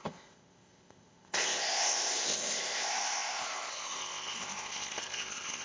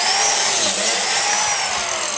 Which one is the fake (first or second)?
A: first